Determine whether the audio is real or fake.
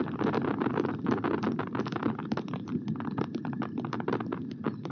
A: real